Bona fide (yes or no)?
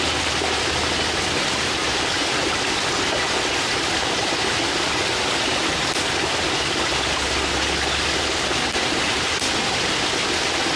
yes